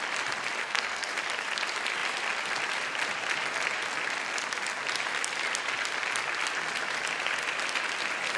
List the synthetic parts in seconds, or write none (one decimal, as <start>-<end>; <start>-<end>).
0.6-1.1